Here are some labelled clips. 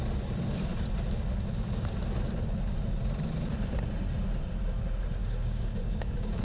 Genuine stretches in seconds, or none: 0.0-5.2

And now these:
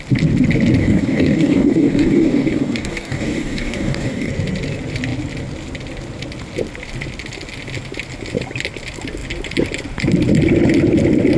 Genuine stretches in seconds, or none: 0.0-0.8; 4.3-11.4

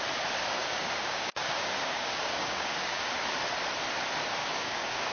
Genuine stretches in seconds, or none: 0.0-0.6; 3.0-4.4

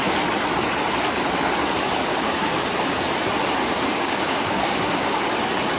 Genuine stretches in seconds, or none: 0.0-2.1; 3.1-3.6; 5.2-5.8

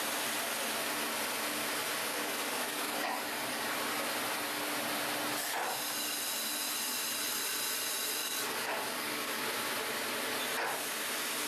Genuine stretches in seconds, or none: 0.0-2.0; 3.6-8.2; 9.4-11.5

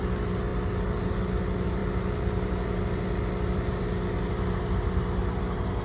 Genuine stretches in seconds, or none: 0.0-5.8

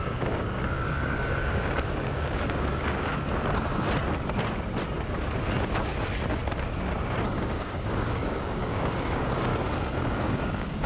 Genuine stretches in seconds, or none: 3.1-7.4; 9.5-10.1